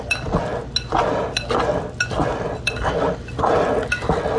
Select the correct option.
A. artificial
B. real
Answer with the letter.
B